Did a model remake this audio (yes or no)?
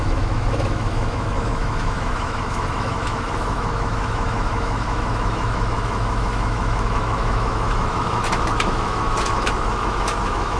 yes